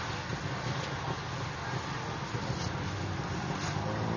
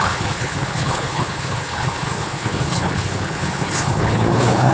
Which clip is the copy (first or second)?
second